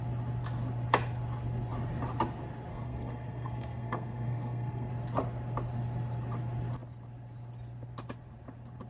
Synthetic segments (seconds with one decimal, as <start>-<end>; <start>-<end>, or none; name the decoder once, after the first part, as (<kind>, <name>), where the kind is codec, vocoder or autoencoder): 2.7-4.9 (codec, SNAC)